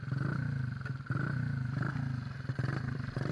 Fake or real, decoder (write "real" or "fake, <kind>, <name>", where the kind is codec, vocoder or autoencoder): real